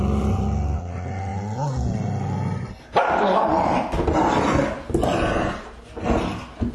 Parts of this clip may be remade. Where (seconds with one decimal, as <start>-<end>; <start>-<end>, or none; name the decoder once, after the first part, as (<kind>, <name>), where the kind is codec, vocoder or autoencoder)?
none